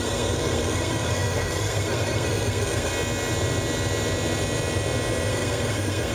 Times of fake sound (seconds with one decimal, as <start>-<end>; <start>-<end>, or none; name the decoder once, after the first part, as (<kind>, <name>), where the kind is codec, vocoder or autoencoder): 0.0-2.9 (codec, SNAC); 5.3-6.1